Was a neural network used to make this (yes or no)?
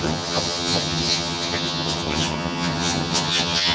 yes